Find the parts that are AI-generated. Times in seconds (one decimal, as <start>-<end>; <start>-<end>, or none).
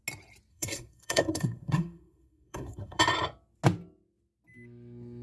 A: 0.5-3.0